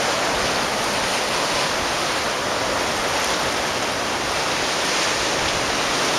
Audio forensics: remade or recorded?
recorded